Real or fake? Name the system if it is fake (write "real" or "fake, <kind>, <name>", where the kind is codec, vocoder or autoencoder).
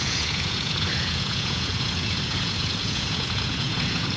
fake, vocoder, Vocos